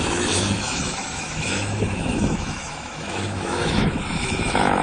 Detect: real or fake fake